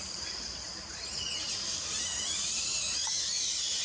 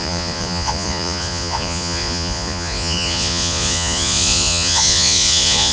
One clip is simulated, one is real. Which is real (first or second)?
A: first